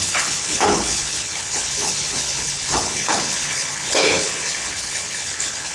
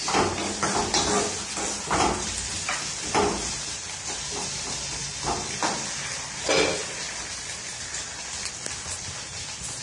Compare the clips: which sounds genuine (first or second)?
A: second